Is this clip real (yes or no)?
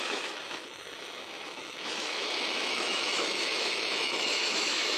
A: no